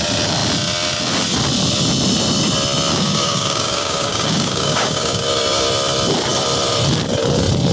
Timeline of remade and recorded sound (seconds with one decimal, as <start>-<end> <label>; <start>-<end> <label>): 0.0-2.9 recorded; 2.9-5.7 remade; 5.7-7.7 recorded